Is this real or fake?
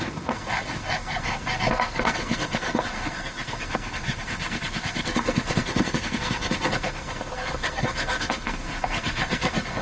fake